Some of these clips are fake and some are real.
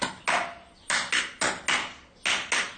real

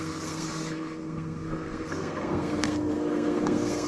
fake